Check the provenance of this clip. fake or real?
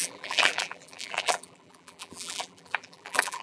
fake